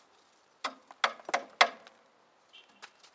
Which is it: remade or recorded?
recorded